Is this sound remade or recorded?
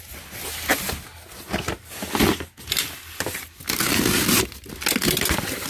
recorded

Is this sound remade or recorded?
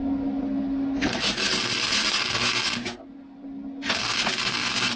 recorded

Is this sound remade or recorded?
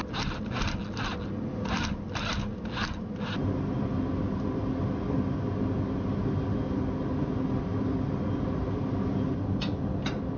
recorded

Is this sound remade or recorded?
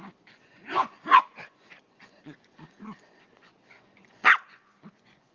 remade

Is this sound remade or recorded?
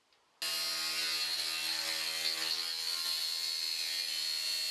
recorded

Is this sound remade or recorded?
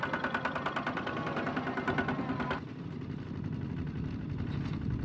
recorded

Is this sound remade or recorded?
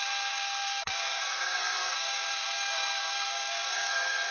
remade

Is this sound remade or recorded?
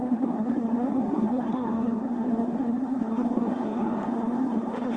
remade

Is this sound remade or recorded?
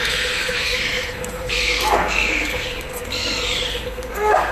remade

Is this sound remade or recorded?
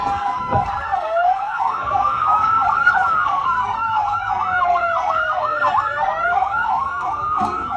remade